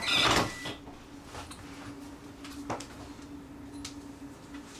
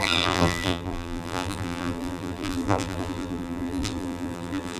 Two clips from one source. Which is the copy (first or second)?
second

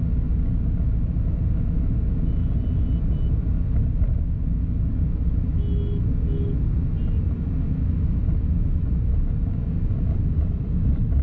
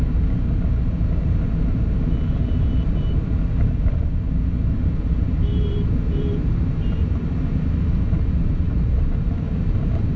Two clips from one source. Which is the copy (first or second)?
second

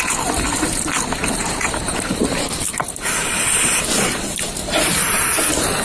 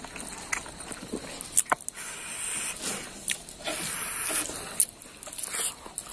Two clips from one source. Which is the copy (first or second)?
first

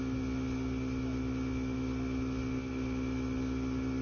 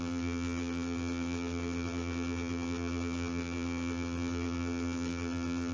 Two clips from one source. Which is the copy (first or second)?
second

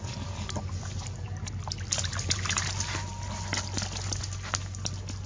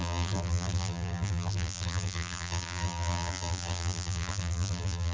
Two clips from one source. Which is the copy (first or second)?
second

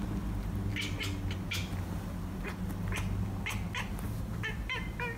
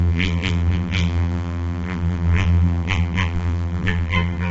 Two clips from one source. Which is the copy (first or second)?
second